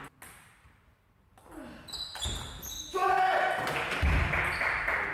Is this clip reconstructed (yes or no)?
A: no